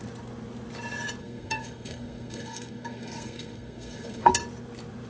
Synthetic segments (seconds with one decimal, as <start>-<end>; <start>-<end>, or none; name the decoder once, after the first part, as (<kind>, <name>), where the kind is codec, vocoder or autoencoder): 1.2-4.3 (codec, SNAC)